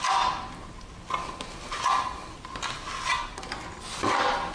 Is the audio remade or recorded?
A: recorded